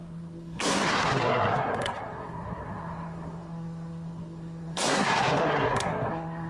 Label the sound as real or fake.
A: fake